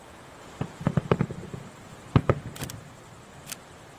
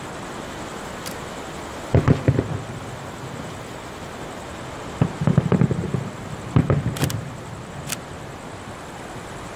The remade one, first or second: first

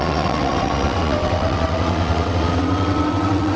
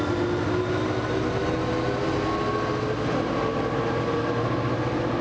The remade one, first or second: first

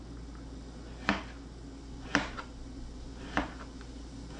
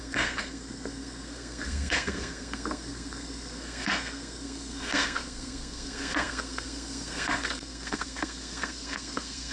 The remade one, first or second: second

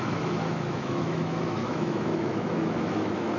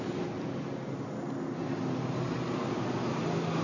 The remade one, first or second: first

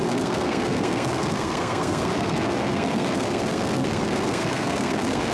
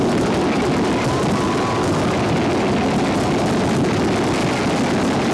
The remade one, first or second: first